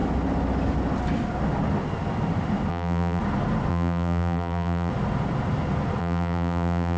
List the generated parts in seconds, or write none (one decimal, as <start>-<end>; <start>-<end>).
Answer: 2.7-3.2; 3.7-4.9; 6.0-7.0